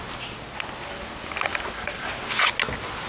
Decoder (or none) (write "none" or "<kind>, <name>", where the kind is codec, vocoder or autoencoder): none